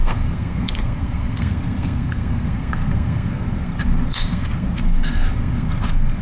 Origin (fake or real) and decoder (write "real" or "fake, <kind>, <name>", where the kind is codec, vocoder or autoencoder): fake, codec, SNAC